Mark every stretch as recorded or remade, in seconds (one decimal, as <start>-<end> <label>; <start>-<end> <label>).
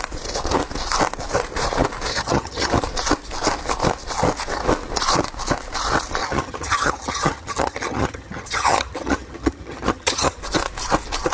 0.0-2.1 recorded; 2.1-2.7 remade; 2.7-6.2 recorded; 6.2-10.4 remade; 10.4-11.3 recorded